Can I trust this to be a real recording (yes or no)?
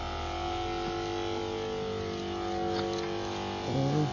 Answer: yes